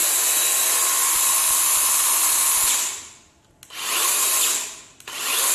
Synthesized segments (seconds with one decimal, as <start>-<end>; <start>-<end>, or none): none